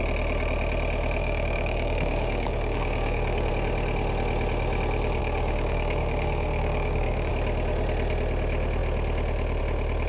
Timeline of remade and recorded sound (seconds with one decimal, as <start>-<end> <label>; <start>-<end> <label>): 0.0-1.2 recorded; 1.2-3.5 remade; 3.5-5.2 recorded; 5.2-7.3 remade; 7.3-10.1 recorded